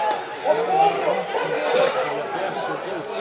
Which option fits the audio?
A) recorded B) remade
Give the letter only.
A